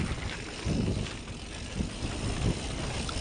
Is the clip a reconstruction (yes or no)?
no